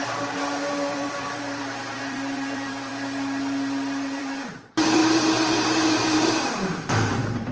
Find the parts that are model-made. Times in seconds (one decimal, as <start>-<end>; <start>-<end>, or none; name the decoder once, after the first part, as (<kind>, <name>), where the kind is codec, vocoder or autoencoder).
0.0-2.9 (vocoder, BigVGAN v2); 4.2-7.5